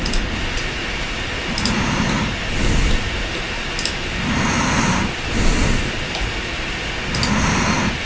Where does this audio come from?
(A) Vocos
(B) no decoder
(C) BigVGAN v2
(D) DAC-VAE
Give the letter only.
B